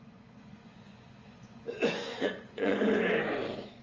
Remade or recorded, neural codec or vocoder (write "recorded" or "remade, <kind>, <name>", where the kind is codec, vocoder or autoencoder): remade, vocoder, Vocos